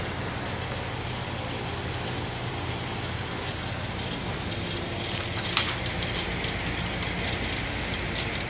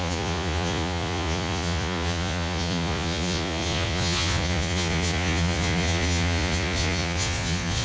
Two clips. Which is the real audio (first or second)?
first